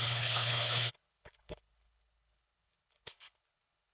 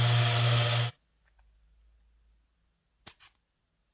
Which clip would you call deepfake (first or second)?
first